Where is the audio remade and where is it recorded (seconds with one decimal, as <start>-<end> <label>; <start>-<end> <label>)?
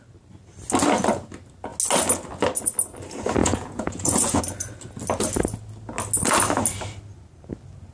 0.0-3.4 recorded; 3.4-4.4 remade; 4.4-7.9 recorded